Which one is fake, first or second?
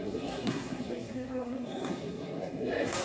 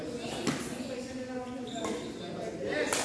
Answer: first